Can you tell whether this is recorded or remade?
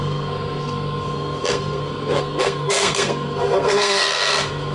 remade